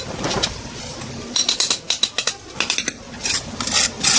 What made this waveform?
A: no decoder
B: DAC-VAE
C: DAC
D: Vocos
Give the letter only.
A